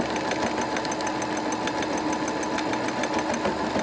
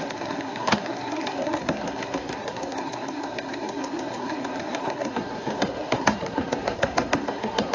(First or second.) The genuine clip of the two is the first